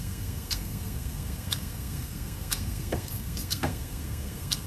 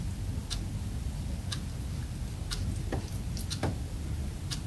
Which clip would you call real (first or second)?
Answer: second